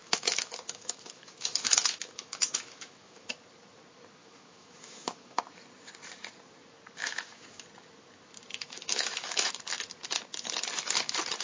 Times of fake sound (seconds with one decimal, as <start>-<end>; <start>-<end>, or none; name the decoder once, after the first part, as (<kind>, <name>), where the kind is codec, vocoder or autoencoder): 0.0-3.3 (autoencoder, DAC-VAE); 4.2-5.4; 7.0-7.6; 8.5-9.5